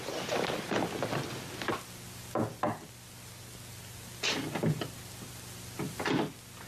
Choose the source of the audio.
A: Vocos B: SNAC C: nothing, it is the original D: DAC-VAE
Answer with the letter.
C